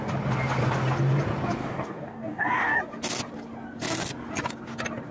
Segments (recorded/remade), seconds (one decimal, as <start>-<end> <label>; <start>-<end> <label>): 0.0-1.6 recorded; 1.6-2.8 remade; 2.8-5.1 recorded